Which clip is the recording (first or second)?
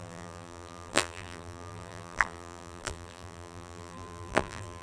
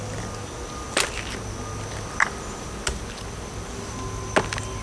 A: second